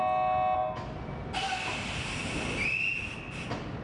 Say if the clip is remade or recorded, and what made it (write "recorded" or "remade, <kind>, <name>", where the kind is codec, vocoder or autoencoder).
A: recorded